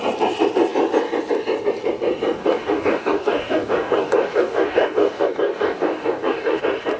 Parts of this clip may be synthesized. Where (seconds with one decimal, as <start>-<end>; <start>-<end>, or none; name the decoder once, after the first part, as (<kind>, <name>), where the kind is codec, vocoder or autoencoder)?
2.4-6.6 (codec, DAC)